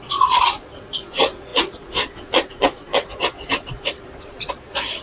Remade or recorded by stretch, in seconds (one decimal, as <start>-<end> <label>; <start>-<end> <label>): 0.0-5.0 remade